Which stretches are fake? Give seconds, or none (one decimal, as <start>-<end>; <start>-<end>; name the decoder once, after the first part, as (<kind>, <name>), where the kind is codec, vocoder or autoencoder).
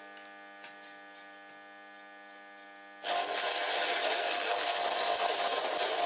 3.9-4.8 (codec, SNAC)